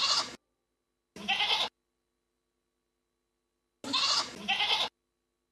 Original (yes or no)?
yes